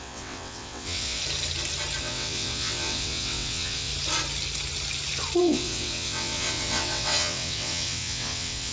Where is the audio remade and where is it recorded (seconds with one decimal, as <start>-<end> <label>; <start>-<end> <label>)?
0.0-1.2 remade; 1.2-2.0 recorded; 2.0-3.9 remade; 3.9-5.4 recorded; 5.4-8.7 remade